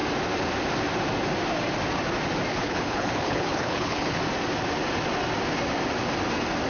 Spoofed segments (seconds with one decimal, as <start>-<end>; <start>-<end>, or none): 2.5-4.2